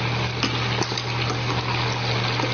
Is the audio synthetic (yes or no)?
no